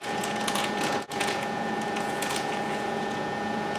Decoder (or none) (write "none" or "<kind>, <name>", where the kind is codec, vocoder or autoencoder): vocoder, Vocos